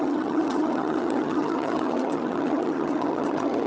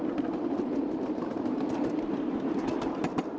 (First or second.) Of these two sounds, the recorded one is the second